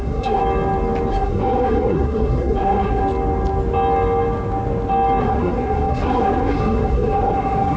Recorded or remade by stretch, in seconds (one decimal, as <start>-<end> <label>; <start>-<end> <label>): 0.0-0.4 remade; 0.4-1.1 recorded; 1.1-3.0 remade; 3.0-5.2 recorded; 5.2-7.8 remade